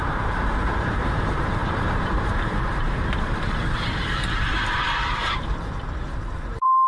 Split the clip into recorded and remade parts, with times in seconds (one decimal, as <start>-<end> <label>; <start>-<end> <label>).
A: 0.0-5.2 remade; 5.2-5.8 recorded; 5.8-6.9 remade